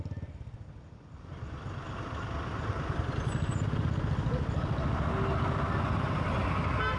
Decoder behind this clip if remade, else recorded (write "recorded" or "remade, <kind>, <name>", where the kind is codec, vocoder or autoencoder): recorded